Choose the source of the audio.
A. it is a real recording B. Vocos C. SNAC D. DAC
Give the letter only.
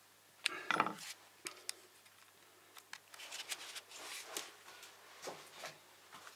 A